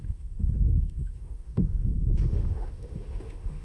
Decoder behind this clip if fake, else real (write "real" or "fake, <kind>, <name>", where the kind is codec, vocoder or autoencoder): fake, autoencoder, DAC-VAE